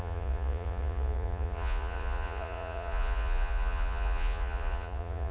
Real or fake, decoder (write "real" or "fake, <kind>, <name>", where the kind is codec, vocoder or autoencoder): fake, vocoder, Vocos